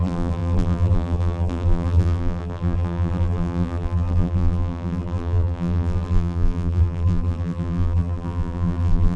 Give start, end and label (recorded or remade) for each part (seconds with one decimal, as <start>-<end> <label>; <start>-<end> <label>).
0.0-9.2 remade